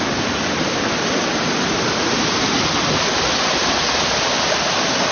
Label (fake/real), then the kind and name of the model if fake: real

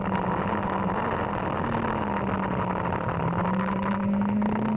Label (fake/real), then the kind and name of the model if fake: real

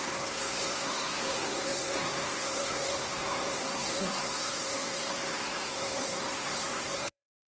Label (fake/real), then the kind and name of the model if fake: fake, codec, SNAC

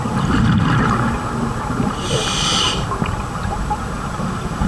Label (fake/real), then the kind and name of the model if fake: real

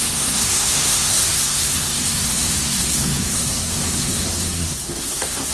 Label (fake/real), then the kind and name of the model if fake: fake, codec, SNAC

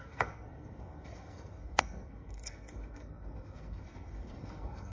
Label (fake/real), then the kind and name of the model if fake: fake, codec, SNAC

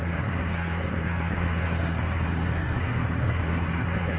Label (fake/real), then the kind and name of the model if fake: fake, codec, SNAC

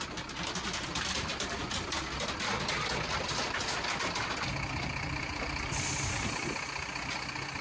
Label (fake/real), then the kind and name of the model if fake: real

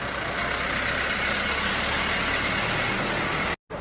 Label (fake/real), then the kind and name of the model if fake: real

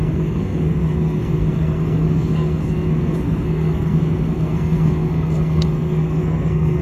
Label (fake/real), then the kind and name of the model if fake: fake, codec, SNAC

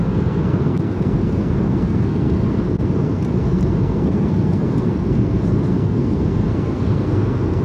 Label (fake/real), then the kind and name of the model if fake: fake, codec, SNAC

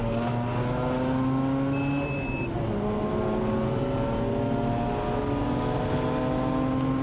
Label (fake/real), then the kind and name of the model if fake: real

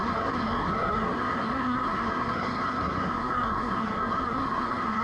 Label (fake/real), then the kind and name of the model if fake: fake, codec, SNAC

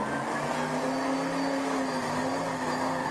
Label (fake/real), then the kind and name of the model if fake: real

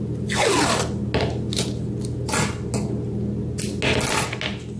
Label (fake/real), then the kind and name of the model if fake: real